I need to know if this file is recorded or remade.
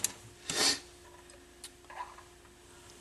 recorded